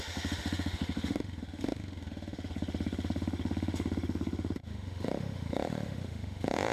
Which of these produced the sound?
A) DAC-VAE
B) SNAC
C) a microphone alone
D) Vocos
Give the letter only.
A